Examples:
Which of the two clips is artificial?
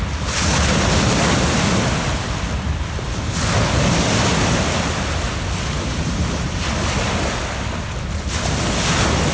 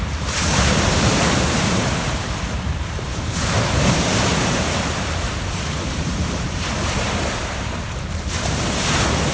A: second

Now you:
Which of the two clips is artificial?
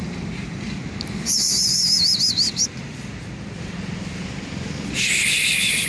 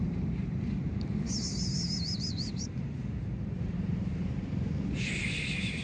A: second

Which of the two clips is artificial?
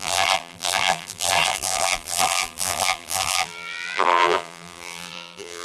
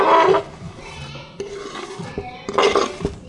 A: first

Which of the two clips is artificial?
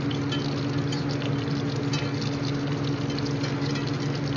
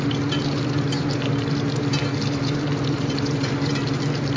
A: second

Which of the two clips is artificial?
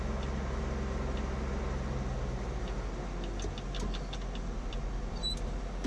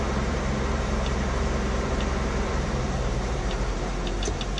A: second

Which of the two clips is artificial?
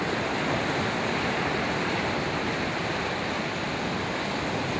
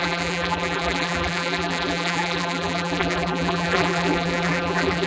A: second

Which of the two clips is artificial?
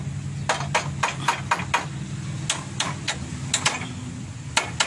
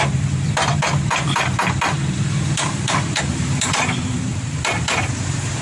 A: second